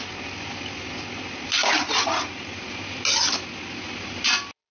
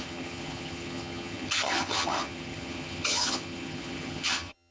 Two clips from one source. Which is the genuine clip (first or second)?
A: first